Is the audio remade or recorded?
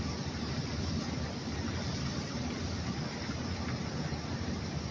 recorded